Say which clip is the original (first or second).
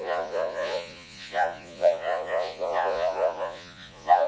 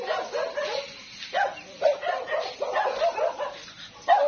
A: second